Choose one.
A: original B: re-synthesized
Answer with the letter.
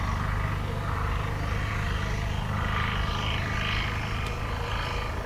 A